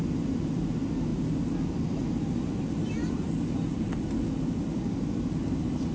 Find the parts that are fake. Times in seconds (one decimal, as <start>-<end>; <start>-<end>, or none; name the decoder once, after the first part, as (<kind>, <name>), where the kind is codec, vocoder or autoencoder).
none